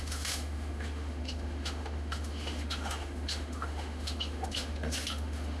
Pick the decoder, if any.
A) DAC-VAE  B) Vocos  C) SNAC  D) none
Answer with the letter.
A